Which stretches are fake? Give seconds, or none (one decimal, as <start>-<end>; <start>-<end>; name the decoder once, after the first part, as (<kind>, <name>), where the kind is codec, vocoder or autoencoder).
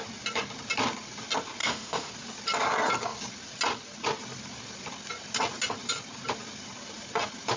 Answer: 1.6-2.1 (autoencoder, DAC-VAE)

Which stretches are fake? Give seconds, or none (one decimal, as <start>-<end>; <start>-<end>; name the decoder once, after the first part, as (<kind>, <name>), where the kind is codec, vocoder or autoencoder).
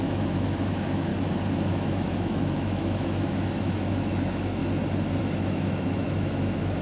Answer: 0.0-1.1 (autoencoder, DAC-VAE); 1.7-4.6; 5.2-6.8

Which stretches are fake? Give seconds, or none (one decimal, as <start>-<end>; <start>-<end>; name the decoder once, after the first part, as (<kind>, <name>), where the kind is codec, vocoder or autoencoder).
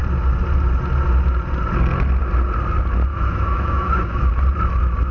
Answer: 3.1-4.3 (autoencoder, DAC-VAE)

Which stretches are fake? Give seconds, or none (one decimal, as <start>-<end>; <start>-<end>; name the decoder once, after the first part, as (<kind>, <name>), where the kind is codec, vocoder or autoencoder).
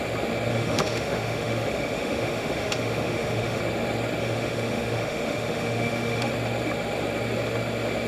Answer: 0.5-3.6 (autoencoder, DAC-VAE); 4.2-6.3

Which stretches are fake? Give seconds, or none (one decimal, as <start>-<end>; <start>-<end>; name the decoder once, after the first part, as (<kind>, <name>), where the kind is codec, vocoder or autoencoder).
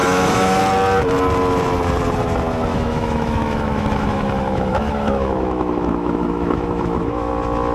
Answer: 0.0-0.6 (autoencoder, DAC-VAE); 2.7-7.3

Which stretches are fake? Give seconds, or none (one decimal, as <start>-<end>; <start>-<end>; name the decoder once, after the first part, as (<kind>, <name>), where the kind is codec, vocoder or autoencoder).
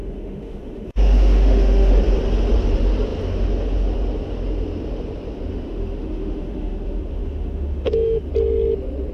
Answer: 0.0-1.9 (autoencoder, DAC-VAE); 5.5-8.3